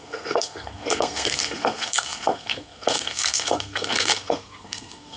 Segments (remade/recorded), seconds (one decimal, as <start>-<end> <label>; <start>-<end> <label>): 0.0-5.2 remade